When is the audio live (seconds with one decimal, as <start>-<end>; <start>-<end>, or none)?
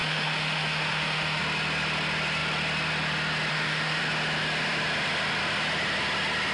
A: 1.4-3.5; 4.0-6.5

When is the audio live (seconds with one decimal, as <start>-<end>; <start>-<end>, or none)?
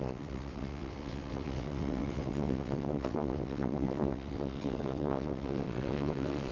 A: none